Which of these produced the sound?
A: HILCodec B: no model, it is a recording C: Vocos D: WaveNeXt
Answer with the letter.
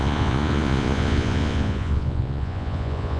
C